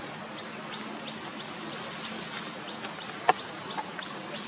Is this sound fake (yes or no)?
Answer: no